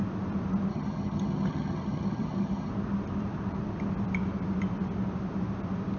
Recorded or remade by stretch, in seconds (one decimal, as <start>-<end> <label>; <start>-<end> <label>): 0.0-0.7 recorded; 0.7-2.7 remade; 2.7-6.0 recorded